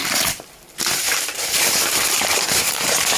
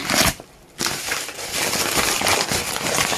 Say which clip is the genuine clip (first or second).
second